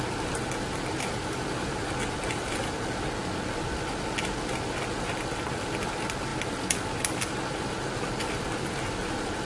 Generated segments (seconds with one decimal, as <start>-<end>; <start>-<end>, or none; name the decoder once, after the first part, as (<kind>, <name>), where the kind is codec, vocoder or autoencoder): none